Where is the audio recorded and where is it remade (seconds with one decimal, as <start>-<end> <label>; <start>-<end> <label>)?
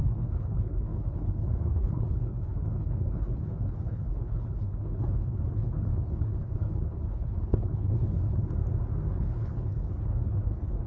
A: 0.0-8.5 remade; 8.5-9.1 recorded; 9.1-10.9 remade